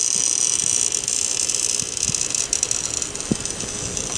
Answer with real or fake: real